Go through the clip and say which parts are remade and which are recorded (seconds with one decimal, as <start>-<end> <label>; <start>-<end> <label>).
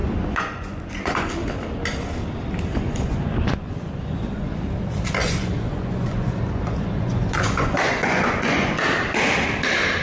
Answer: 0.0-1.3 remade; 1.3-2.7 recorded; 2.7-4.6 remade; 4.6-5.2 recorded; 5.2-8.8 remade; 8.8-10.0 recorded